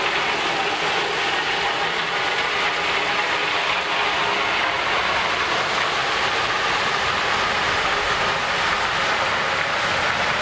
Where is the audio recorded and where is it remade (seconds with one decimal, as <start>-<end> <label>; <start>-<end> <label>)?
0.0-7.7 recorded; 7.7-8.2 remade; 8.2-10.4 recorded